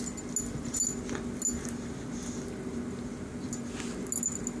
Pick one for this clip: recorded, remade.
recorded